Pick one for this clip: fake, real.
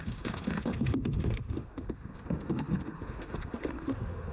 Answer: fake